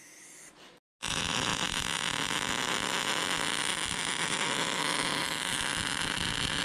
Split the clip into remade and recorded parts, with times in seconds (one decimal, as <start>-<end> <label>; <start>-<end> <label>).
0.0-3.7 recorded; 3.7-4.8 remade; 4.8-5.2 recorded; 5.2-6.6 remade